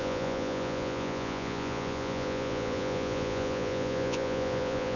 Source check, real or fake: fake